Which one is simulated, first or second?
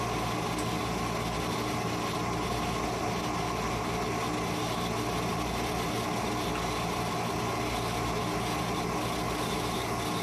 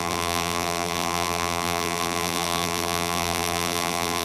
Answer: second